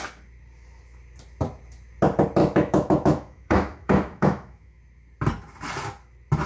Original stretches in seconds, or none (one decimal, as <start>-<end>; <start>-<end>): 0.0-2.4; 4.8-6.5